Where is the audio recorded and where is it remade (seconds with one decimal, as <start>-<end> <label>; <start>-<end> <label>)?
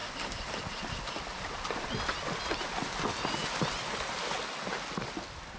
0.0-5.6 recorded